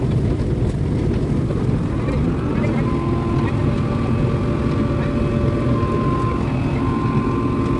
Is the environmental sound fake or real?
real